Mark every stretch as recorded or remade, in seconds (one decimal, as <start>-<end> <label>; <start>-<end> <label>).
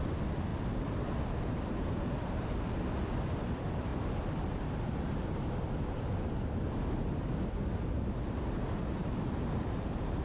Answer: 0.0-10.2 recorded